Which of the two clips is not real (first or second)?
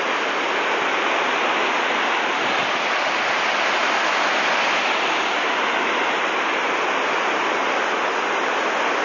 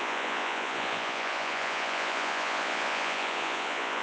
second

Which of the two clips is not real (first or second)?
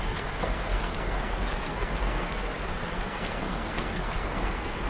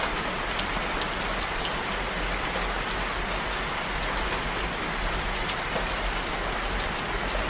first